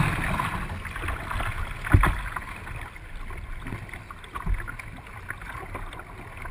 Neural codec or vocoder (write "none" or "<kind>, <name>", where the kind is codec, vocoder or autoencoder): none